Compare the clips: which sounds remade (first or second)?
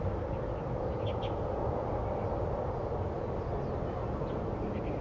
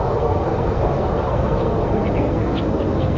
second